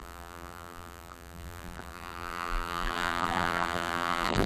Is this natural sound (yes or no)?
no